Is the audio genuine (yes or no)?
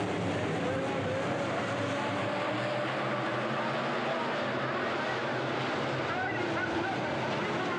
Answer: yes